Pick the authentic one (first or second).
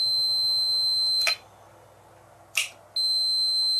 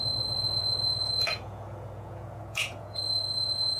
first